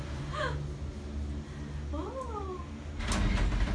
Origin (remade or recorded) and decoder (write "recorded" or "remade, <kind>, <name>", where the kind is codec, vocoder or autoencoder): recorded